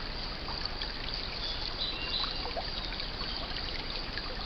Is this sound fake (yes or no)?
no